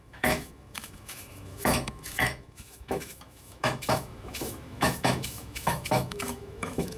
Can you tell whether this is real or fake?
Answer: fake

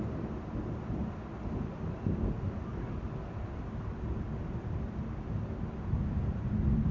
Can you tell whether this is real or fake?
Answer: real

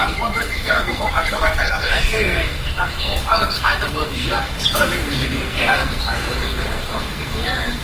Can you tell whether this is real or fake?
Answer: fake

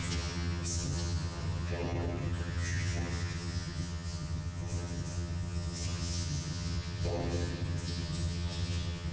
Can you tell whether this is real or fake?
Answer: fake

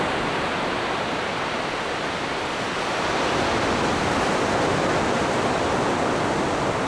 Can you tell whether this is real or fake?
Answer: real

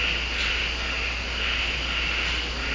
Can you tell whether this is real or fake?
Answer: real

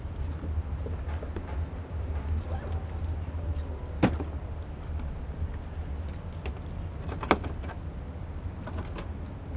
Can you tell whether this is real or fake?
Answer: real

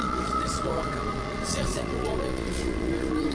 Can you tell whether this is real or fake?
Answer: fake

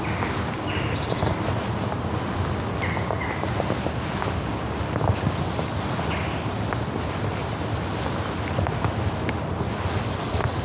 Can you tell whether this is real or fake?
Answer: real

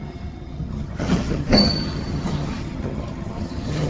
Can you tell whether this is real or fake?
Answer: fake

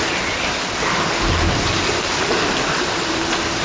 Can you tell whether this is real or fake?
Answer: real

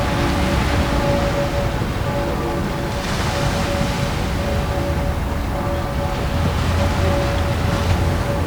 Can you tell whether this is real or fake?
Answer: real